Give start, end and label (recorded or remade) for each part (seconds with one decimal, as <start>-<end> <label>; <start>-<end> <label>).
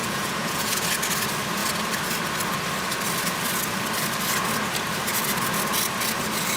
0.0-0.9 remade; 0.9-6.6 recorded